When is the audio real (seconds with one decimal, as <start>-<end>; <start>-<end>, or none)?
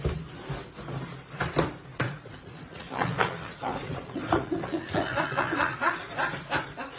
0.0-1.9; 6.0-7.0